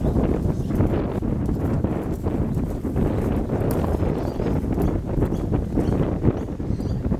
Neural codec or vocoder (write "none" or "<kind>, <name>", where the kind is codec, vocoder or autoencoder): none